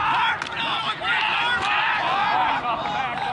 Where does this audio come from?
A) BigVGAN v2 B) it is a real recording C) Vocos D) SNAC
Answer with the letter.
B